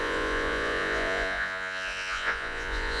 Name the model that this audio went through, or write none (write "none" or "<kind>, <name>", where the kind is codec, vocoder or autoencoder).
vocoder, Vocos